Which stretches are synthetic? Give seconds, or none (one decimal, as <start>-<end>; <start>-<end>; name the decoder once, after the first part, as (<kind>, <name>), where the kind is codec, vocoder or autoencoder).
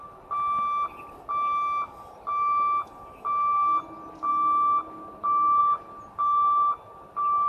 none